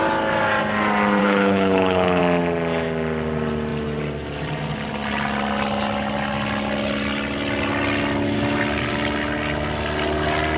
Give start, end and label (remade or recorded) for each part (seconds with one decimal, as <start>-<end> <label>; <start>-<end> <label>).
0.0-1.2 recorded; 1.2-2.2 remade; 2.2-10.6 recorded